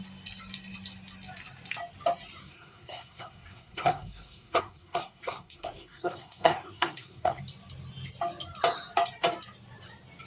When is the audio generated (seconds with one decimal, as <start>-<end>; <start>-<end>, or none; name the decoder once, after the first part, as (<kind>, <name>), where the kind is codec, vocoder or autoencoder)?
2.4-7.4 (codec, SNAC)